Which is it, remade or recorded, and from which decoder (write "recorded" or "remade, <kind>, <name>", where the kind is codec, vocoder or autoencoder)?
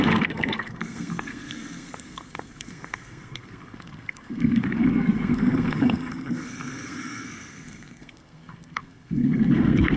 remade, codec, SNAC